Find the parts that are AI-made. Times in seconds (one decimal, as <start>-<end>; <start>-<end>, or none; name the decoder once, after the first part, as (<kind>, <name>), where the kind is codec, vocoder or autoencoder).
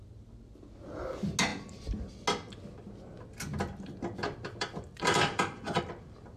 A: 1.5-2.2 (vocoder, BigVGAN v2); 4.2-5.8